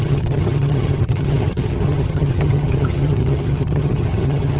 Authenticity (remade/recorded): remade